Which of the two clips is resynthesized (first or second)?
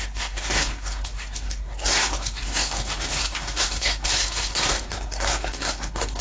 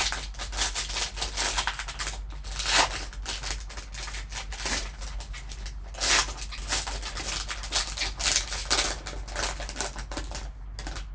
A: first